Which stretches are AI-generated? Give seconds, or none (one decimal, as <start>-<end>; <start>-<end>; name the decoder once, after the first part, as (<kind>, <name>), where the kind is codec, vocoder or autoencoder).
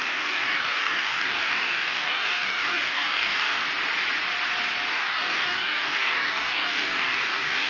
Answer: 0.0-3.6 (codec, DAC); 4.9-7.7